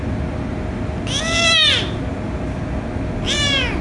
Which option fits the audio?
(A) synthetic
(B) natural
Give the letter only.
B